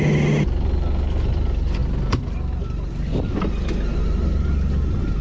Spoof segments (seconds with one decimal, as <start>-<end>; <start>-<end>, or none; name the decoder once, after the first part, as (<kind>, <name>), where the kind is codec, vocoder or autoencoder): none